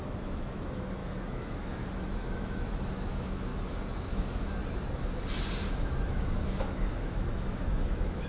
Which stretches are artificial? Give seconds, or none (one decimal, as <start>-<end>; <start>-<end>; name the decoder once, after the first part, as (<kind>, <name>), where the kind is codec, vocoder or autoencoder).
0.0-3.5 (autoencoder, DAC-VAE); 4.1-4.6; 5.7-8.3